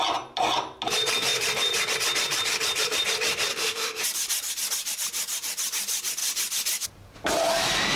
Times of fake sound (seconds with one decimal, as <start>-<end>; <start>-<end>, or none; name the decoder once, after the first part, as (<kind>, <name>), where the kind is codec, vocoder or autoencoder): 3.5-4.0 (autoencoder, DAC-VAE)